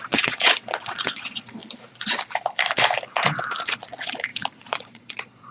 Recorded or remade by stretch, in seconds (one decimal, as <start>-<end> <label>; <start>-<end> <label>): 0.0-1.6 remade; 1.6-3.6 recorded; 3.6-5.5 remade